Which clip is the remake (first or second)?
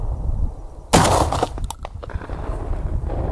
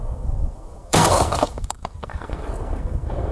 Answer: second